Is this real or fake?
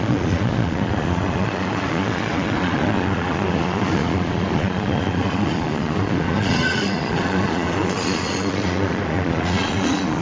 fake